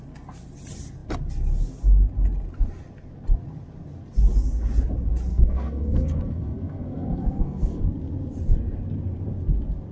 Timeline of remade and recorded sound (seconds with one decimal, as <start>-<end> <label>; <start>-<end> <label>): 0.0-5.3 recorded; 5.3-7.8 remade; 7.8-9.9 recorded